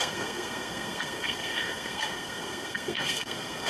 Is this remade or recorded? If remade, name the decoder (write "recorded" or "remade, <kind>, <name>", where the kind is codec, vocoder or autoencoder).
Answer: remade, codec, SNAC